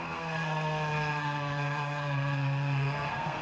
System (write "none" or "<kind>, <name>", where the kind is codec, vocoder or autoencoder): codec, SNAC